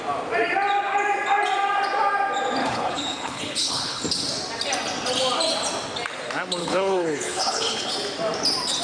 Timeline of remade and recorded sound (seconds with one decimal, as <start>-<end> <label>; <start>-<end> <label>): 0.0-2.6 recorded; 2.6-4.0 remade; 4.0-6.6 recorded; 6.6-7.9 remade; 7.9-8.8 recorded